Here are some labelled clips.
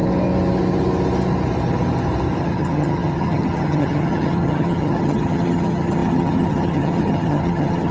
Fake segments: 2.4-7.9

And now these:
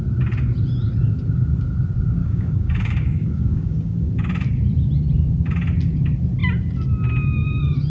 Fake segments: 2.2-4.1

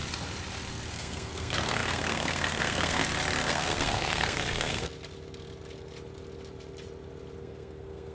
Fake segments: 0.9-3.0; 3.5-4.9; 7.4-8.1

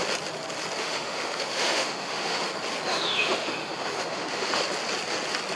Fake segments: 0.8-2.4; 2.9-4.6

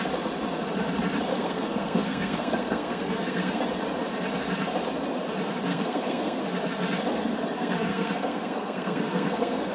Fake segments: 1.3-3.6; 5.7-6.4; 7.6-9.7

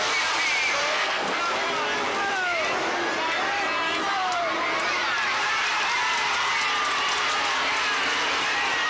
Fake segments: 0.8-1.4

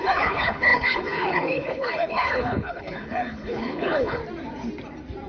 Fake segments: 0.0-4.2

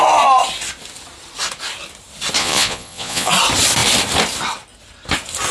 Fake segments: 2.4-3.3